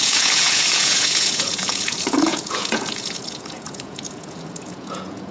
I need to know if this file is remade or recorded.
remade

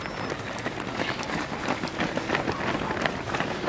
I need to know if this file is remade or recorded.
recorded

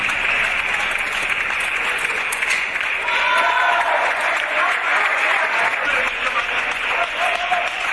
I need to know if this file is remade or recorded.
remade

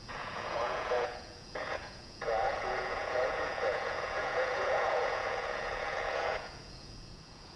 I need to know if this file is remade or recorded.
remade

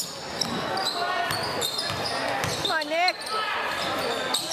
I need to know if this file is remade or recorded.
recorded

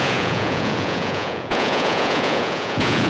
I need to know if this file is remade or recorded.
remade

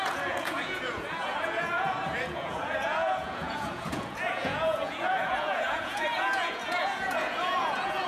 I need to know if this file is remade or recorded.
remade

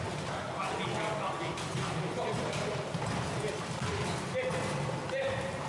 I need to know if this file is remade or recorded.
recorded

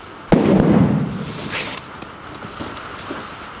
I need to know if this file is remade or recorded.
recorded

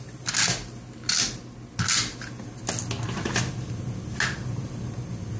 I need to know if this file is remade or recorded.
recorded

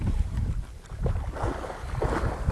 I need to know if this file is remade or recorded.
recorded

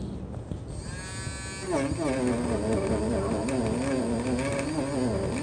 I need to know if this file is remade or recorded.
recorded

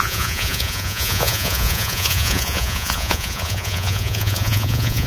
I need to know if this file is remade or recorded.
remade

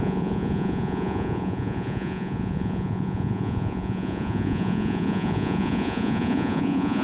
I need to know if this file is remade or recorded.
remade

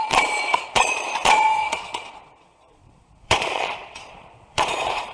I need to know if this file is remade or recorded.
remade